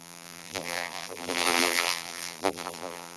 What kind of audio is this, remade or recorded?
remade